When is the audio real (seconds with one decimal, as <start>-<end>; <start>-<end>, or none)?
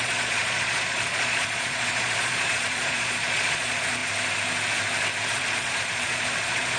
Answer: 4.0-5.3